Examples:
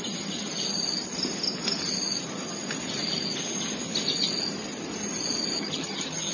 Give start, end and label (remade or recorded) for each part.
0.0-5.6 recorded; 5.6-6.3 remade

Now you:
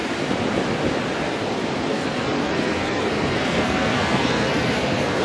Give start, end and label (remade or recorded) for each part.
0.0-1.9 recorded; 1.9-5.2 remade